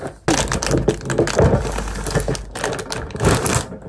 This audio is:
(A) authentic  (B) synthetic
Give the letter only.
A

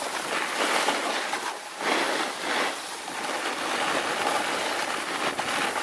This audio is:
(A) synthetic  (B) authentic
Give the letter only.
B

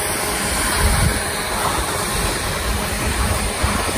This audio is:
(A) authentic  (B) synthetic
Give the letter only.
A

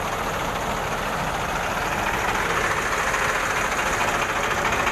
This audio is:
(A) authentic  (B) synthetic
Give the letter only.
A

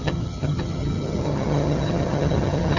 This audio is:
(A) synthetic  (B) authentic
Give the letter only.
A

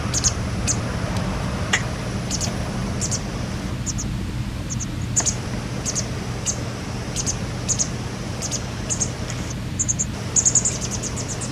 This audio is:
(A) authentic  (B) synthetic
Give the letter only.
A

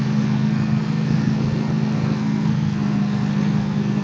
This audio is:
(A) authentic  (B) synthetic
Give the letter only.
B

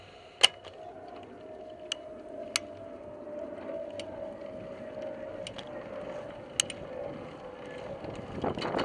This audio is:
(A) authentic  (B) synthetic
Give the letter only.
A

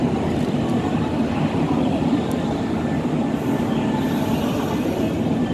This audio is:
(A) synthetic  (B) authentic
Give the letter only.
A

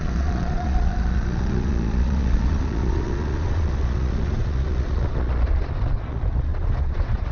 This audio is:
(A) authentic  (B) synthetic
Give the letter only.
B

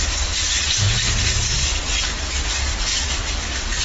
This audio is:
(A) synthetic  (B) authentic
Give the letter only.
B